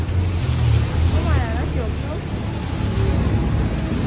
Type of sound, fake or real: real